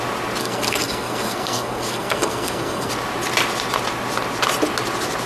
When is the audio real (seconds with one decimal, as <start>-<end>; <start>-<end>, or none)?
0.0-0.4; 2.9-5.3